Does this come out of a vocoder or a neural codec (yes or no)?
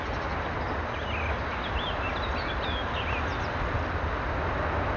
no